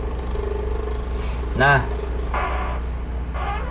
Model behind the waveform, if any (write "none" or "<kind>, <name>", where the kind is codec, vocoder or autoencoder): none